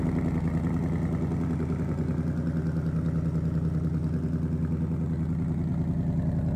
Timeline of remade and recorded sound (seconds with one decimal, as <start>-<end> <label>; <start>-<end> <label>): 0.0-6.6 recorded